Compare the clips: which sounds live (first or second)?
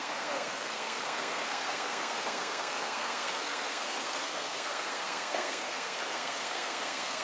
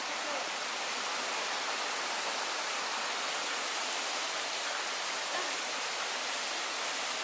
second